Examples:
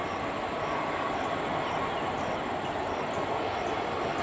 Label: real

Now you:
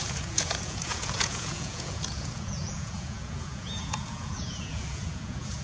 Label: fake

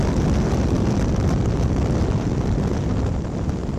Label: real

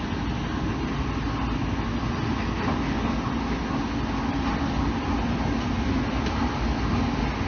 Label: real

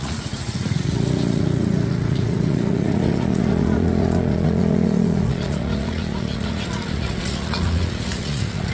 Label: fake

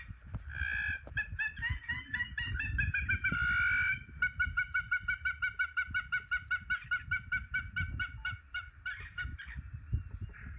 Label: real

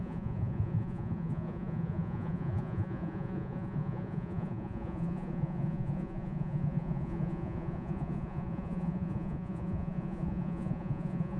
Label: fake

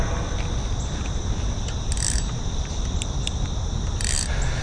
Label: real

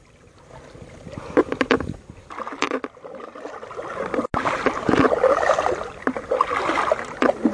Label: real